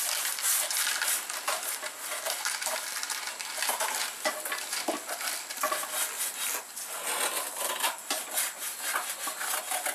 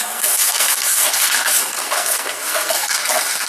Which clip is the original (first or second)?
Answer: first